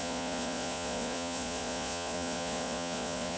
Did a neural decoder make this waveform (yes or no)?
yes